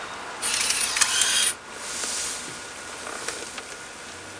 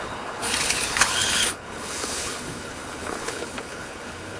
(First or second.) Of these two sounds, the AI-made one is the second